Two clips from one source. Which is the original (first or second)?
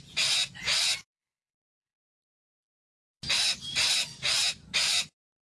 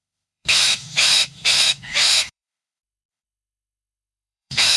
first